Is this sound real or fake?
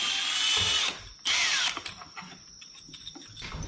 real